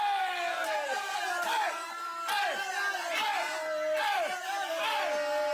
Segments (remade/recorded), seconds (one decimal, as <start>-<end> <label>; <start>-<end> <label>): 0.0-0.5 recorded; 0.5-1.2 remade; 1.2-5.5 recorded